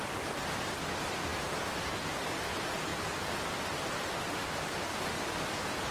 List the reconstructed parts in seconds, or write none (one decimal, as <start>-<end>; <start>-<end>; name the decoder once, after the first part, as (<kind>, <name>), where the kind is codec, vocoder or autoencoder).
none